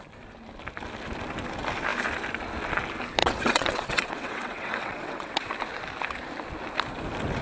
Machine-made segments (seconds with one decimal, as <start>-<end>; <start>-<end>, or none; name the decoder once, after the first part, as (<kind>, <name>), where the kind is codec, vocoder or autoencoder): 3.2-5.5 (vocoder, WaveNeXt)